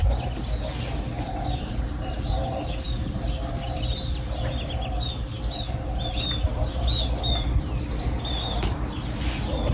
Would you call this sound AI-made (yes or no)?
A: no